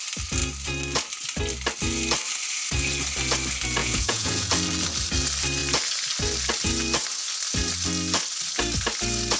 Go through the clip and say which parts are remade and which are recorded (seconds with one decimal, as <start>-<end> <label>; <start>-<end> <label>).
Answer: 0.0-3.8 recorded; 3.8-4.5 remade; 4.5-9.4 recorded